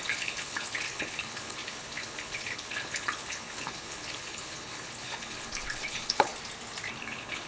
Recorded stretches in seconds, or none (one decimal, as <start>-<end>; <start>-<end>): 6.3-7.0